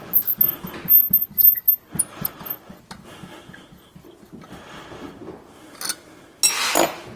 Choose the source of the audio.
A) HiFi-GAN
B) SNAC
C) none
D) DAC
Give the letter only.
C